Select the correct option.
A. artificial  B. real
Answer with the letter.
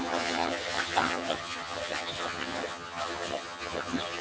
A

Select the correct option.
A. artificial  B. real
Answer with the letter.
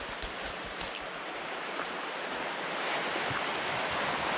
B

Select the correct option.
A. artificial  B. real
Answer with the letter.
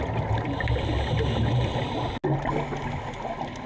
B